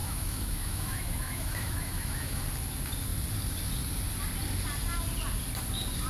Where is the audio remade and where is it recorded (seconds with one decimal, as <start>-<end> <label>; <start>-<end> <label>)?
0.0-2.4 remade; 2.4-6.1 recorded